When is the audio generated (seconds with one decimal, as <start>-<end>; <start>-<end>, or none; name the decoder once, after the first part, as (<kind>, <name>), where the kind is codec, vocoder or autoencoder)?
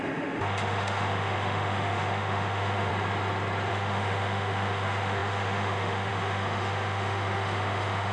0.0-2.9 (autoencoder, DAC-VAE); 3.7-8.1